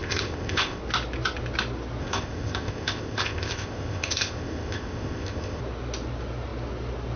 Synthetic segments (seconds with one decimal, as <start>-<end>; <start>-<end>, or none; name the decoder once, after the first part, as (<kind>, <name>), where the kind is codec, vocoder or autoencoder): 0.0-0.8 (codec, ZipCodec); 2.0-5.6